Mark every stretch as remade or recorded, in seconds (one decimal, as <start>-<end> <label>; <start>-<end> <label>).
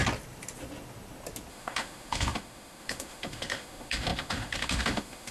0.0-1.5 recorded; 1.5-5.3 remade